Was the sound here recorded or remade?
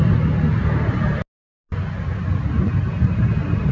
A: recorded